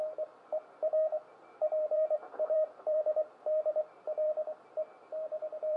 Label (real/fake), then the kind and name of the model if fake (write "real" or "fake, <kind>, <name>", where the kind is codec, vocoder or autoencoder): fake, vocoder, BigVGAN v2